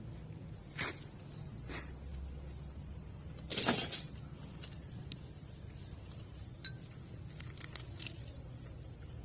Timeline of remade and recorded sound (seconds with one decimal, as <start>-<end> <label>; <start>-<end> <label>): 0.0-9.2 recorded